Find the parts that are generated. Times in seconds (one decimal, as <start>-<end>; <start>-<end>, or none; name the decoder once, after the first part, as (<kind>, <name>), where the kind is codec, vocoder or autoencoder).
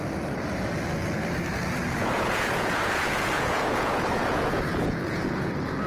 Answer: 2.0-5.5 (vocoder, Vocos)